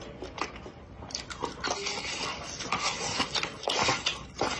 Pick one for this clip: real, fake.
real